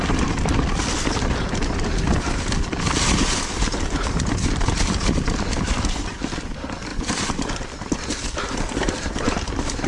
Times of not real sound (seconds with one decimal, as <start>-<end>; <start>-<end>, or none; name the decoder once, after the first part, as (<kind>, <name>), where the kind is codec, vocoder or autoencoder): 6.9-8.6 (vocoder, BigVGAN v2)